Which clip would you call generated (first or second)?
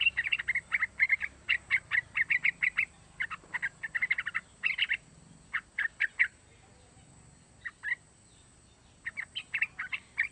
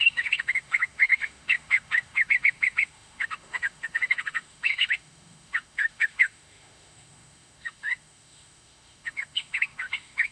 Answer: second